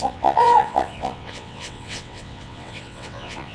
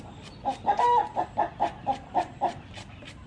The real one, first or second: second